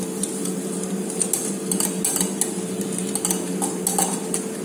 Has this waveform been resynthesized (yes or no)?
no